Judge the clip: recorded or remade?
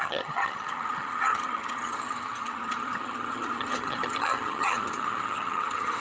remade